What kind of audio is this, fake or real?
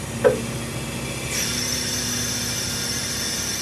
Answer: real